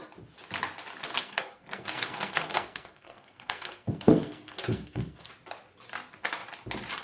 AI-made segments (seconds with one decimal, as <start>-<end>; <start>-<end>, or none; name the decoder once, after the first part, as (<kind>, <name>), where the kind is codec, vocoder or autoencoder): 1.1-5.3 (codec, SNAC)